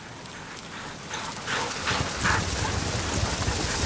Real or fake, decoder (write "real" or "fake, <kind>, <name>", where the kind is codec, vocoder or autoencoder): real